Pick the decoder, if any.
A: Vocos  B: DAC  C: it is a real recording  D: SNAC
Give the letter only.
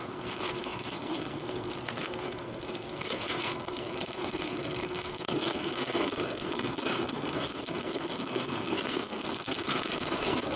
D